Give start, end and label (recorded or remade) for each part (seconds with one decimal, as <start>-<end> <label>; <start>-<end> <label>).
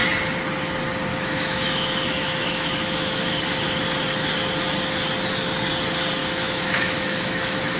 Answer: 0.0-1.1 recorded; 1.1-3.4 remade; 3.4-6.2 recorded; 6.2-7.8 remade